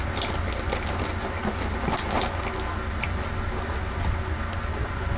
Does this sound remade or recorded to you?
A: recorded